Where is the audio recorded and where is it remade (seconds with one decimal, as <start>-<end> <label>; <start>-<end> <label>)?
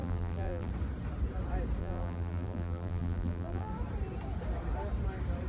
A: 0.0-0.7 remade; 0.7-1.8 recorded; 1.8-3.7 remade; 3.7-5.5 recorded